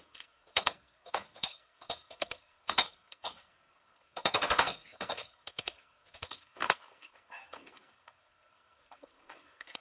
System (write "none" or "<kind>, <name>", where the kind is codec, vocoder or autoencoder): codec, SNAC